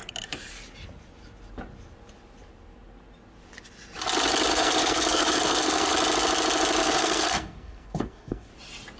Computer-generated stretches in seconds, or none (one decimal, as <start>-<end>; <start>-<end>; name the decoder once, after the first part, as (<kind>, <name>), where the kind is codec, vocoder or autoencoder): 4.5-5.9 (codec, SNAC); 6.8-8.5